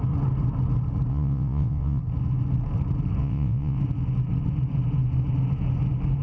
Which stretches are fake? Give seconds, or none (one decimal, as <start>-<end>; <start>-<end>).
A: 1.1-2.0; 3.2-3.8